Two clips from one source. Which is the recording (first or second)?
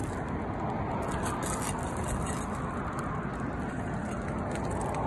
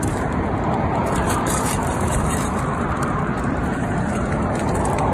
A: first